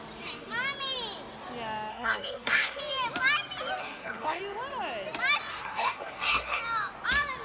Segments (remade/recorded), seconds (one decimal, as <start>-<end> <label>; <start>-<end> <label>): 0.0-1.9 recorded; 1.9-2.8 remade; 2.8-3.8 recorded; 3.8-4.4 remade; 4.4-5.5 recorded; 5.5-6.6 remade; 6.6-7.4 recorded